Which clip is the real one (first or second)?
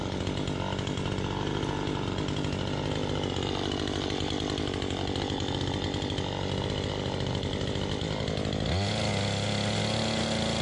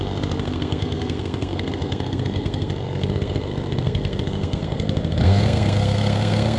first